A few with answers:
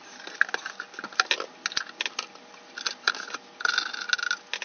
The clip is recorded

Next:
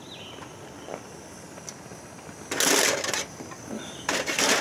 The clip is recorded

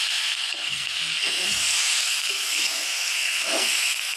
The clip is remade